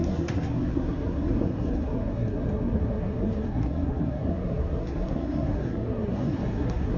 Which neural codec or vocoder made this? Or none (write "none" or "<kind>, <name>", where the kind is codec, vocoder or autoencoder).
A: codec, SNAC